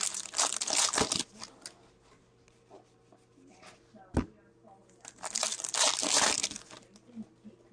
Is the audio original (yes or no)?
yes